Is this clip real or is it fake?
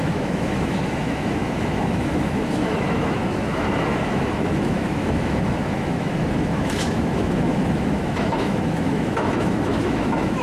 fake